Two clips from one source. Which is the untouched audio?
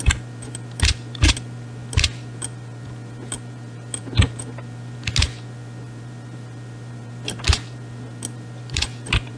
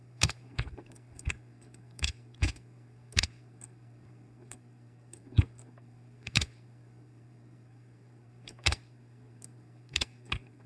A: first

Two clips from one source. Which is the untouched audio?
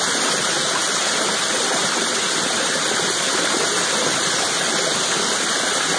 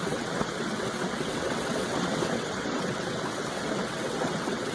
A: first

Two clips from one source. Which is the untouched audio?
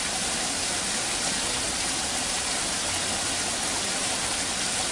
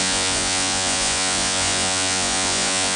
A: first